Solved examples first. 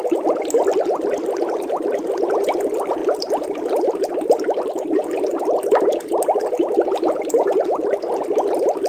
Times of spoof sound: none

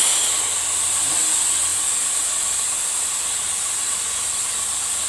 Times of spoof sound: none

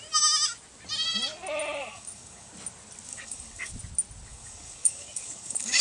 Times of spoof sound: 1.8-2.5 (codec, DAC); 3.1-3.7; 4.3-5.8